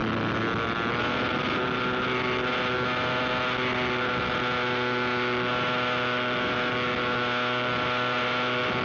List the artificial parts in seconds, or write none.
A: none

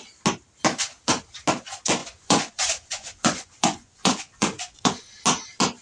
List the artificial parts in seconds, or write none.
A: 2.0-5.2 (vocoder, Vocos)

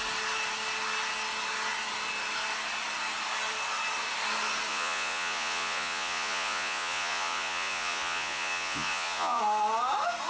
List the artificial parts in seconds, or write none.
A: 4.7-9.4 (vocoder, Vocos)